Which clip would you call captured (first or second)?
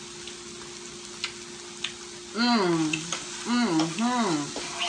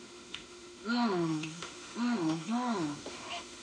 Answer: first